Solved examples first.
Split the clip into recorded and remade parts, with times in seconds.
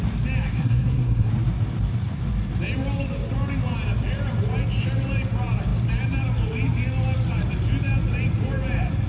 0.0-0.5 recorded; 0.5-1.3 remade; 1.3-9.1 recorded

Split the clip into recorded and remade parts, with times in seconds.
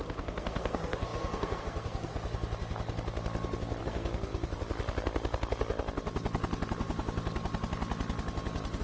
0.0-2.1 remade; 2.1-3.8 recorded; 3.8-4.3 remade; 4.3-8.8 recorded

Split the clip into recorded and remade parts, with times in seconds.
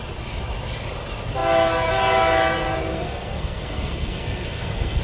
0.0-2.9 recorded; 2.9-5.0 remade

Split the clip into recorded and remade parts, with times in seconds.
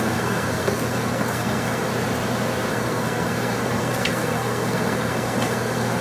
0.0-1.9 remade; 1.9-2.7 recorded; 2.7-6.0 remade